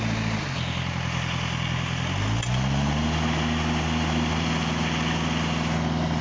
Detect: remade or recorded recorded